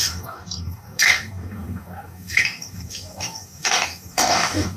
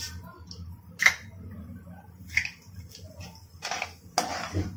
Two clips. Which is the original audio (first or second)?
second